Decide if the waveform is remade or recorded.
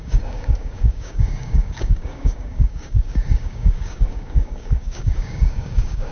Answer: remade